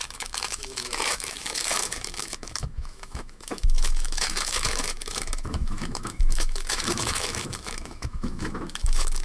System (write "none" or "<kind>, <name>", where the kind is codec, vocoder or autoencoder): autoencoder, DAC-VAE